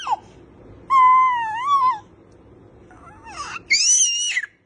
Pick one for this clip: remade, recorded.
recorded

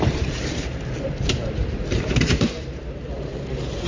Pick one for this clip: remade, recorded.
remade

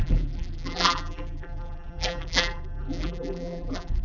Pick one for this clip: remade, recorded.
remade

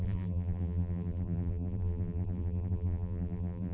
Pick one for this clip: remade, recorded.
remade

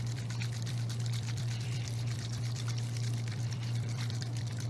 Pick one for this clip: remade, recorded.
remade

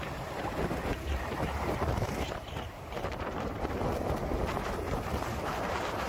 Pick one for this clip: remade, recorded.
remade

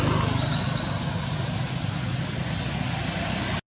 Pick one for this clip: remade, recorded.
recorded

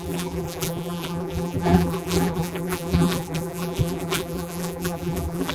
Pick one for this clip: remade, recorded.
remade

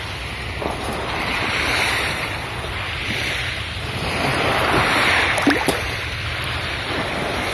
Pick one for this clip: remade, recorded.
remade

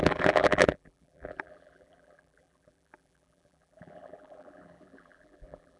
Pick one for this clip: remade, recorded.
remade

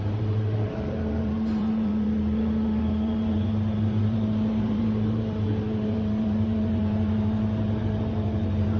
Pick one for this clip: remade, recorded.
remade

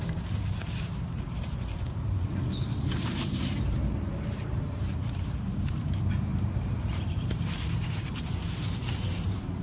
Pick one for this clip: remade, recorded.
remade